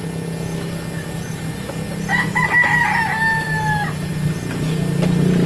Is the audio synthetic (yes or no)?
no